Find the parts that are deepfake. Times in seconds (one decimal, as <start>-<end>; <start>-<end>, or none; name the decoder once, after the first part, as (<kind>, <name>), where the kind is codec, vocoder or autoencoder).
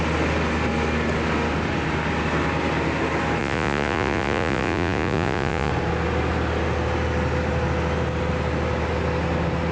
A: 3.4-5.7 (vocoder, Vocos)